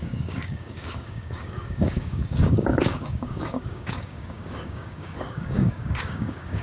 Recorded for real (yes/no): no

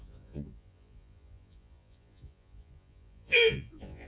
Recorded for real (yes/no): no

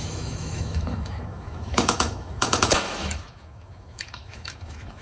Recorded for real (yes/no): no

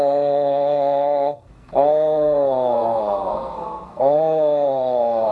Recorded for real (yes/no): no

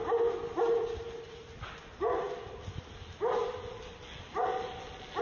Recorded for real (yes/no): yes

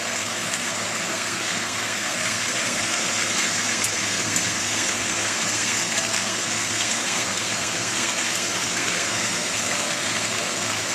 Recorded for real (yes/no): no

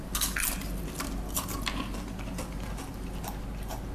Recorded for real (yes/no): yes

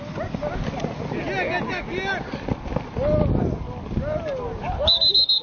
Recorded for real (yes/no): yes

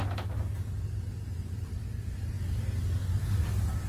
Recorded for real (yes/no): yes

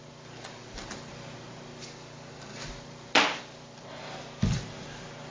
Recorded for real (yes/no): yes